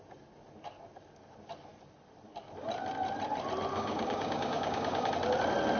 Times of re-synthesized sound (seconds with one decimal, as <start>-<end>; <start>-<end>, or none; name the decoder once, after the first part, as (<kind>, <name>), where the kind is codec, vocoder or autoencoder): 3.7-5.1 (codec, DAC)